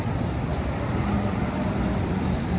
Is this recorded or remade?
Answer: remade